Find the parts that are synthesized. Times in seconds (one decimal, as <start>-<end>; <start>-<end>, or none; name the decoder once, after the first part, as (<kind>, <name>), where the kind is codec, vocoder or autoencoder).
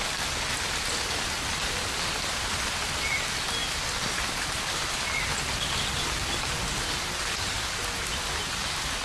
none